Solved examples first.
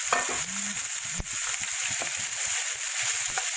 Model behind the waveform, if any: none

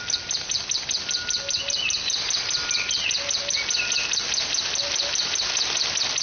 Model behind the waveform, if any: none